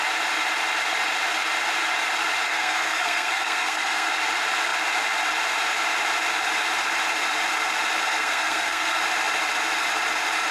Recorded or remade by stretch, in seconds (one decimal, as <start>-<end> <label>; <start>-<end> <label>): 0.0-2.5 recorded; 2.5-4.1 remade; 4.1-8.1 recorded; 8.1-9.0 remade; 9.0-10.5 recorded